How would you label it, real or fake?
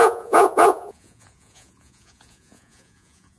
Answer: fake